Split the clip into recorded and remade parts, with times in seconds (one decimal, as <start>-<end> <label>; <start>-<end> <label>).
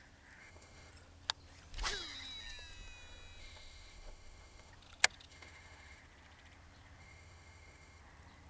0.0-0.4 recorded; 0.4-0.9 remade; 0.9-3.4 recorded; 3.4-4.7 remade; 4.7-5.3 recorded; 5.3-6.0 remade; 6.0-7.0 recorded; 7.0-8.0 remade; 8.0-8.5 recorded